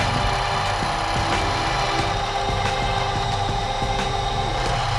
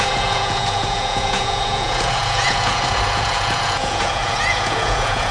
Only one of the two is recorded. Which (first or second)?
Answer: first